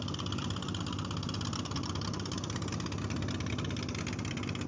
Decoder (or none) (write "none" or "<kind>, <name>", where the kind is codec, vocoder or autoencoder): none